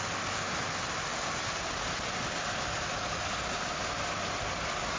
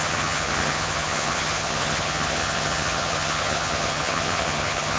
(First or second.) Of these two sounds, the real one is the first